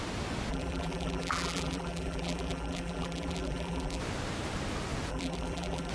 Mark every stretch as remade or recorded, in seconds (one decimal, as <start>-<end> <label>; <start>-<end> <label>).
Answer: 0.0-0.5 recorded; 0.5-4.0 remade; 4.0-5.1 recorded; 5.1-5.9 remade